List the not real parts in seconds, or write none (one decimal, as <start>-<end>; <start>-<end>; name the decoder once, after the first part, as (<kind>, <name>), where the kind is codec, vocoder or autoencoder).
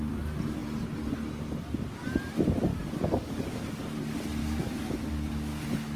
2.7-3.8 (codec, DAC); 4.4-6.0